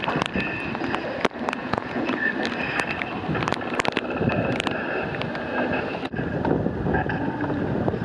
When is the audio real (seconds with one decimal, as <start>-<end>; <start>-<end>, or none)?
0.0-1.6; 2.2-8.0